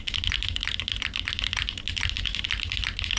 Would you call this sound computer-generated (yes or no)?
no